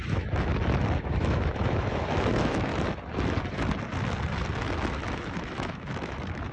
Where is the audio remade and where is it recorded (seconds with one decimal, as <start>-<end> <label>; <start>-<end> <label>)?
0.0-0.5 remade; 0.5-1.0 recorded; 1.0-2.7 remade; 2.7-4.9 recorded; 4.9-6.5 remade